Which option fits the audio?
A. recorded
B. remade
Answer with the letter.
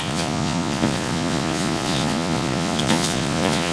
B